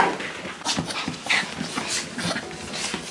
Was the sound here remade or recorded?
recorded